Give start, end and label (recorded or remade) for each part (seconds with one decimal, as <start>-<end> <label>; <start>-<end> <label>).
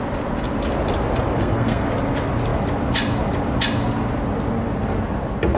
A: 0.0-1.4 recorded; 1.4-1.9 remade; 1.9-5.6 recorded